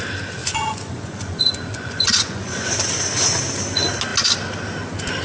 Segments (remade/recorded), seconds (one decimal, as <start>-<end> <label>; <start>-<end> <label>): 0.0-0.4 recorded; 0.4-2.7 remade; 2.7-5.2 recorded